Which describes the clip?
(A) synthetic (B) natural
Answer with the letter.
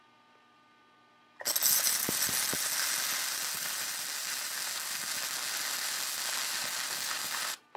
B